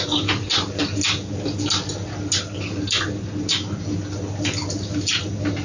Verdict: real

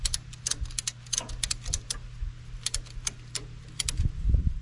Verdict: real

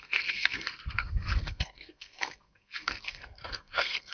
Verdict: fake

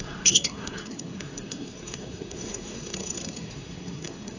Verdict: fake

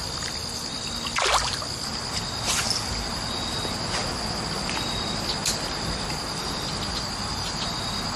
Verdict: real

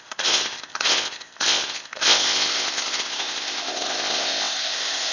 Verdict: fake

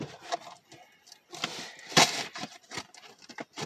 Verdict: real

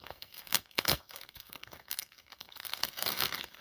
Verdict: fake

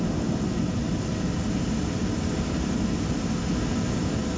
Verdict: real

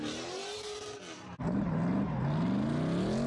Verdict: real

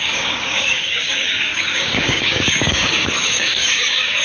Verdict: fake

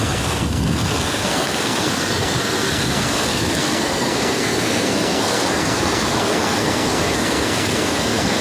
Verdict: fake